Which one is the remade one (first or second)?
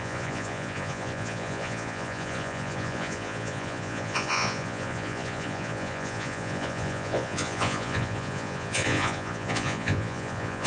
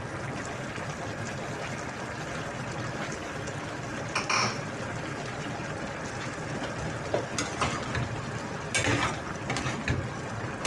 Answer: first